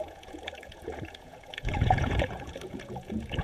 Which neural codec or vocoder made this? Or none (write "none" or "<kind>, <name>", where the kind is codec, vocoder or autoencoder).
vocoder, Vocos